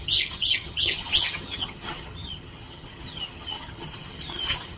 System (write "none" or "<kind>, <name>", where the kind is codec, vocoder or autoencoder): vocoder, HiFi-GAN